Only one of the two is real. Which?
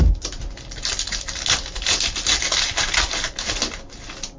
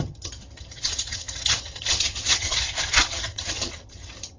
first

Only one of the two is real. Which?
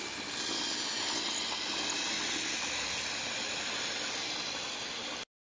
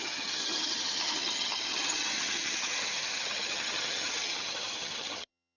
first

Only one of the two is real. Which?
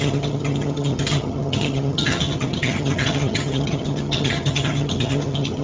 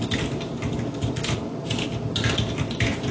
second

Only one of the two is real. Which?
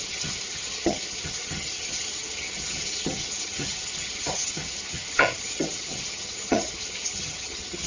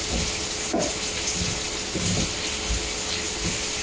second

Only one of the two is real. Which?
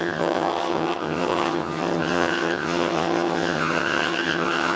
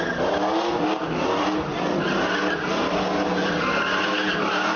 second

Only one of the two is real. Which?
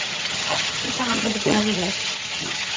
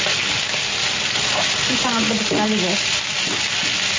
second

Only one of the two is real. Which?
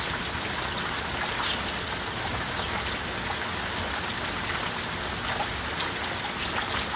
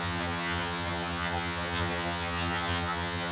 first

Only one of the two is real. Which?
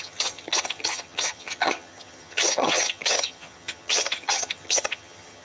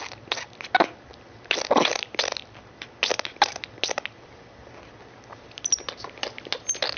second